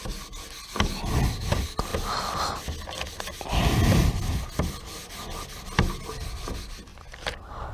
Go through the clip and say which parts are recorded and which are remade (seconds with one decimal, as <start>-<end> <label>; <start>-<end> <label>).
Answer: 0.0-7.7 recorded